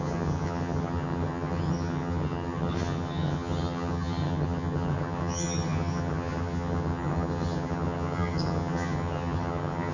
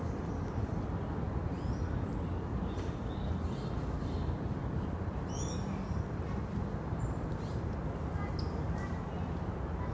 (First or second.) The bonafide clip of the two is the second